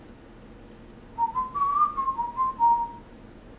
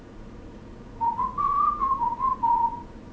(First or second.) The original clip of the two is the first